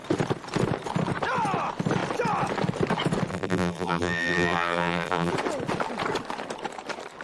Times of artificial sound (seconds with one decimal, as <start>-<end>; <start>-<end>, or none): 3.3-5.3